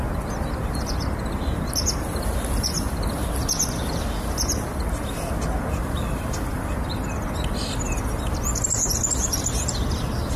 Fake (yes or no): no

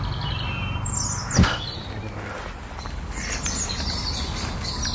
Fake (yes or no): no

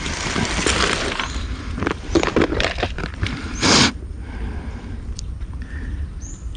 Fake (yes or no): yes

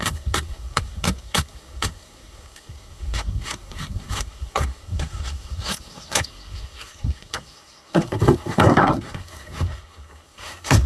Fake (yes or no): yes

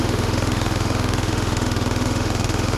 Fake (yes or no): yes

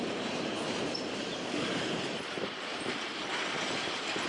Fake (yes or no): yes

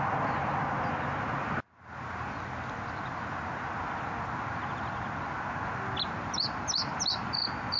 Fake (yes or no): no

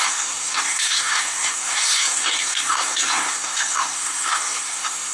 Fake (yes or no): yes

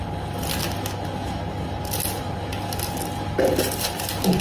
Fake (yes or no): no